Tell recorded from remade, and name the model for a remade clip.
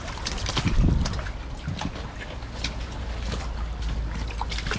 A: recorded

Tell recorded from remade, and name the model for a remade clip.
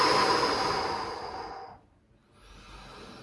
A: recorded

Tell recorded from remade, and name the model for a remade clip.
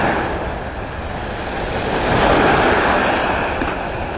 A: recorded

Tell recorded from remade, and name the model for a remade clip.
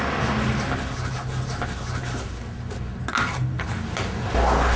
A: recorded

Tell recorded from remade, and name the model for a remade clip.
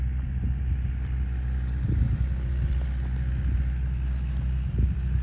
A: recorded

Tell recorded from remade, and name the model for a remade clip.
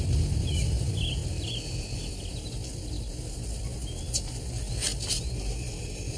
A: recorded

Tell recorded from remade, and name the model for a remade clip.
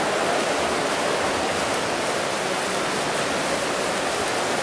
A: recorded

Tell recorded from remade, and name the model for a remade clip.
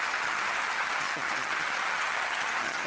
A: remade, vocoder, HiFi-GAN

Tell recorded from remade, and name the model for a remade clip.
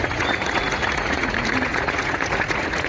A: remade, vocoder, Vocos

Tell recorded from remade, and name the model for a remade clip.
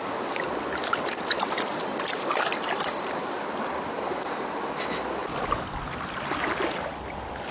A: recorded